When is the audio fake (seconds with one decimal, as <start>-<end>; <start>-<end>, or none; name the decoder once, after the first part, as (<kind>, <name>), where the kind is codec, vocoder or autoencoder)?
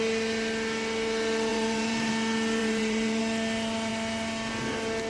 1.5-2.1 (vocoder, BigVGAN v2); 2.6-3.2